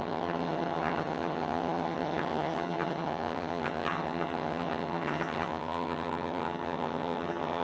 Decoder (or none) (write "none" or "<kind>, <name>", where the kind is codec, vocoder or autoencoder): vocoder, HiFi-GAN